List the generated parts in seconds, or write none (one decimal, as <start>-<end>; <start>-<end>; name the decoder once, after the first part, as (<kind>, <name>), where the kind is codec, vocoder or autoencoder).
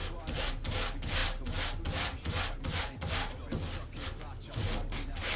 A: none